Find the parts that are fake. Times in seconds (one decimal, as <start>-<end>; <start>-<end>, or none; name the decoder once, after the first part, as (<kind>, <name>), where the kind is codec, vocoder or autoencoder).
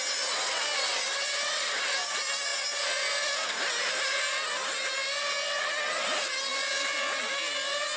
none